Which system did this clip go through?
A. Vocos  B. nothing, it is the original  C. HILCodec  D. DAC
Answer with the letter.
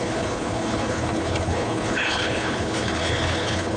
C